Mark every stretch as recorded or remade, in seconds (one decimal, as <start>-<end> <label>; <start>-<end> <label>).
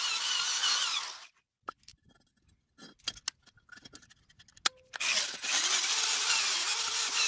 0.0-7.3 recorded